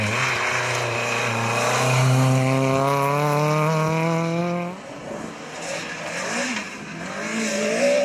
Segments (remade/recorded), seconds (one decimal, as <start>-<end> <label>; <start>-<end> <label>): 0.0-8.0 recorded

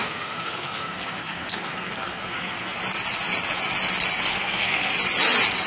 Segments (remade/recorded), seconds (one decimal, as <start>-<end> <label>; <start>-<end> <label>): 0.0-2.8 remade; 2.8-4.3 recorded; 4.3-4.9 remade; 4.9-5.7 recorded

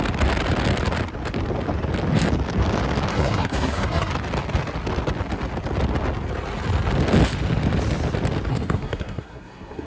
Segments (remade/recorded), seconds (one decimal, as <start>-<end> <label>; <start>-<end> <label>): 0.0-3.1 recorded; 3.1-4.1 remade; 4.1-8.5 recorded; 8.5-9.9 remade

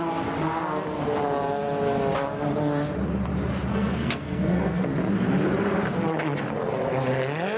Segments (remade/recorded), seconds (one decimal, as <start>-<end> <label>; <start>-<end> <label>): 0.0-3.7 recorded; 3.7-4.9 remade; 4.9-7.6 recorded

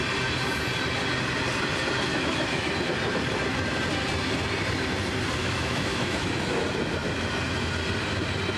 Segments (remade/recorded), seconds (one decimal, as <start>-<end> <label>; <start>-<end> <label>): 0.0-2.1 recorded; 2.1-2.7 remade; 2.7-5.4 recorded; 5.4-6.4 remade; 6.4-8.6 recorded

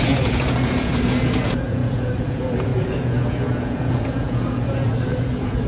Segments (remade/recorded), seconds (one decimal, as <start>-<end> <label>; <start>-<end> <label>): 0.0-5.7 remade